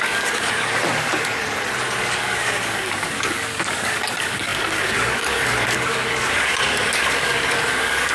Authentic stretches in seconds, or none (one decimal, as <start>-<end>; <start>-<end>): 1.4-2.0